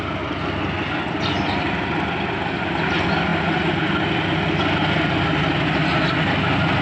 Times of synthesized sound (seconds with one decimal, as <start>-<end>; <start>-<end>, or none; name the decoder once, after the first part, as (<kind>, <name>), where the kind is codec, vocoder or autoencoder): none